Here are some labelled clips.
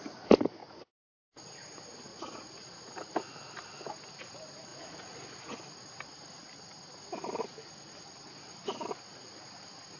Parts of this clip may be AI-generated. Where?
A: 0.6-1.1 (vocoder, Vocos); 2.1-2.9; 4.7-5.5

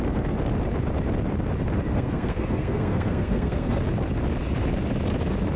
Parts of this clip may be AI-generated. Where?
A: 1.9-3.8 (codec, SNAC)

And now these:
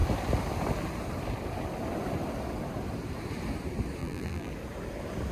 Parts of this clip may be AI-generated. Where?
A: 4.0-4.5 (vocoder, BigVGAN v2)